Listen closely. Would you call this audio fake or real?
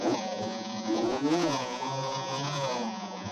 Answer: fake